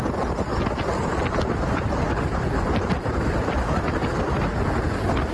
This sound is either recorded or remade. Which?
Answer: recorded